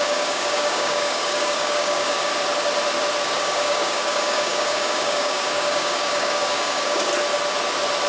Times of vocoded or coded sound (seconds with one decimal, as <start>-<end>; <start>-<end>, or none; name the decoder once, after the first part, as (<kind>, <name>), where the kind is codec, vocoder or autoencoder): 0.0-2.3 (codec, DAC); 3.2-7.1